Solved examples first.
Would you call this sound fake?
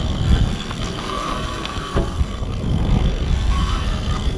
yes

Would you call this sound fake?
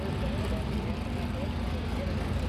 no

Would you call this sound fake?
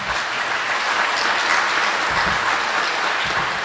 no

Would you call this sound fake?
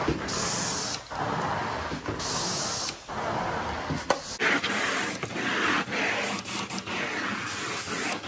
no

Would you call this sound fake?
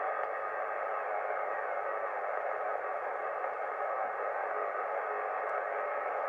no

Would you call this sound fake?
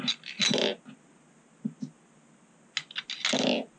no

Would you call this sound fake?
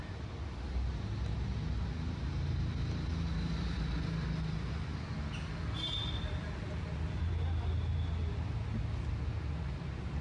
no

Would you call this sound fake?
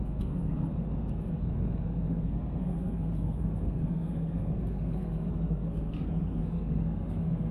yes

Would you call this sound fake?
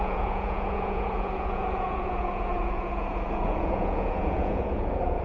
yes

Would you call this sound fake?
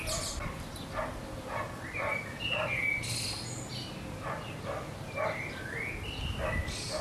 no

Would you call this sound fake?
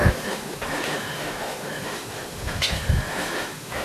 yes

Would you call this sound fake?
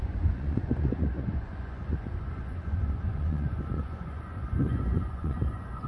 yes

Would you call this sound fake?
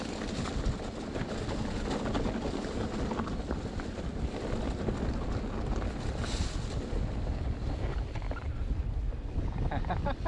no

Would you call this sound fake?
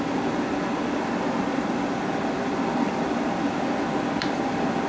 no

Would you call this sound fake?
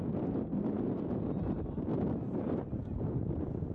no